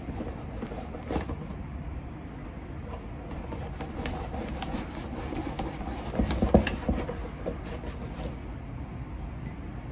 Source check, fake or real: real